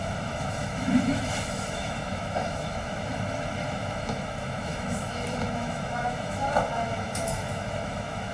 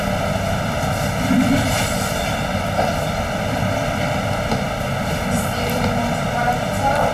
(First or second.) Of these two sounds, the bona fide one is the second